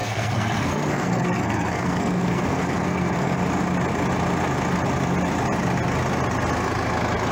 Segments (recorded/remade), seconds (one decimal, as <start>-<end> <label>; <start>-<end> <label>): 0.0-3.4 remade; 3.4-7.3 recorded